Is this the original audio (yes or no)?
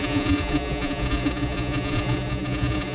no